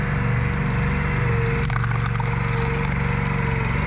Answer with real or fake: real